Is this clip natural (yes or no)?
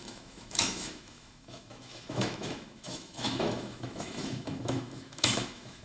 no